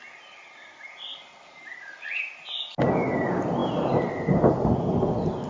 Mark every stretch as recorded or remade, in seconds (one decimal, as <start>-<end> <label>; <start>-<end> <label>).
0.0-5.5 recorded